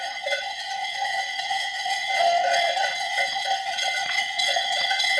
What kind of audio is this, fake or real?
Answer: fake